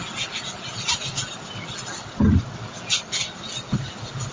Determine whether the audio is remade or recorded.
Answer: recorded